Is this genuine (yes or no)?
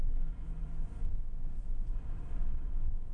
yes